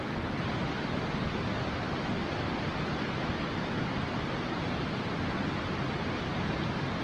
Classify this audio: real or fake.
real